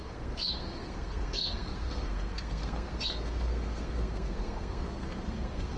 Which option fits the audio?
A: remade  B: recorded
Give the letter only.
A